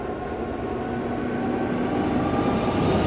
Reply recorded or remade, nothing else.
recorded